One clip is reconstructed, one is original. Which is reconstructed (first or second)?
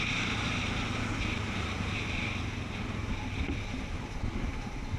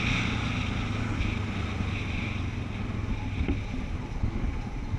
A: first